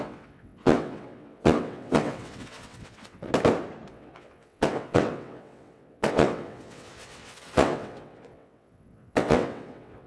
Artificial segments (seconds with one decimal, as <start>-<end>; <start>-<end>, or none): 0.0-3.3; 3.9-10.1